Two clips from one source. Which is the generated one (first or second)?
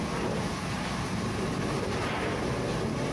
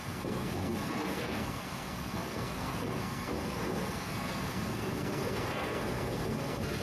second